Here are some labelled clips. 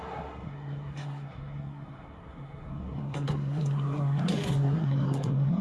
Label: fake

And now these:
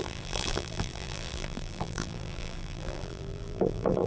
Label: fake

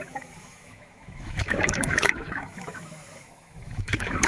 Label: fake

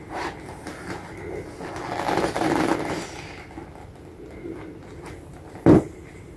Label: real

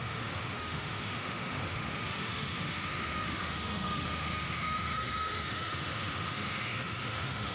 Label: fake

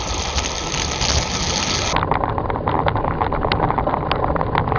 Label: real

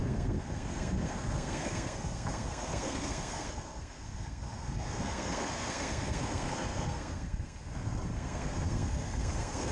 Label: fake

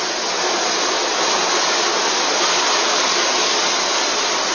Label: real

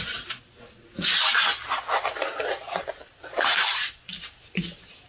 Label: real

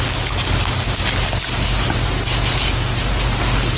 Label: real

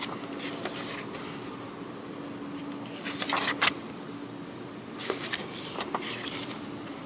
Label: real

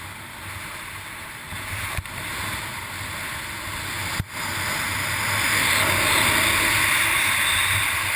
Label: real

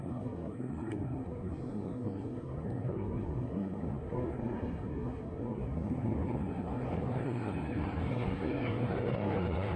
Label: fake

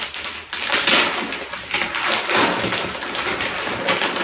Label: real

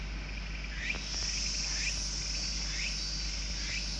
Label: real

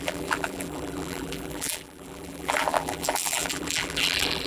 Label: fake